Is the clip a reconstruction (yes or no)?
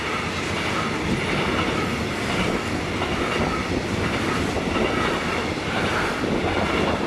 no